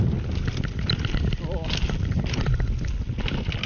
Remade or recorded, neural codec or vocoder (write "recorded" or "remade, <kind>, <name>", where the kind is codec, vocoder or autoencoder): recorded